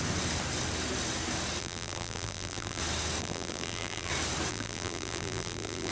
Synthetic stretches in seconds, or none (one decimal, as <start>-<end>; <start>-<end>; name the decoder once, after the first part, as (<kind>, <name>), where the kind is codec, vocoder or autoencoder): 1.6-2.8 (vocoder, BigVGAN v2); 3.2-4.1; 4.5-5.9